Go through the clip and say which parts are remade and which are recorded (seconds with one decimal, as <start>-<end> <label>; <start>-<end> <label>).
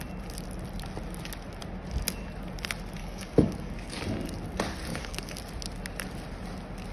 0.0-3.0 recorded; 3.0-4.0 remade; 4.0-4.9 recorded; 4.9-5.4 remade; 5.4-6.9 recorded